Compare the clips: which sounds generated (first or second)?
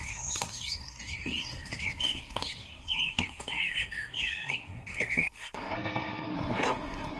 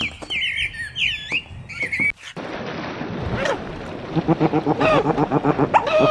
first